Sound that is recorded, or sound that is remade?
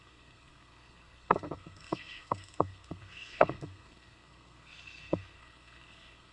remade